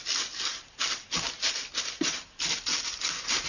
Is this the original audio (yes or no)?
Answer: yes